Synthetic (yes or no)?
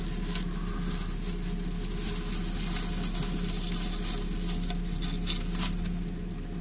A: no